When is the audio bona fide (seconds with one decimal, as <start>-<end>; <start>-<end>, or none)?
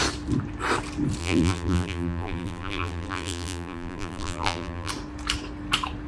0.0-1.2; 4.9-6.1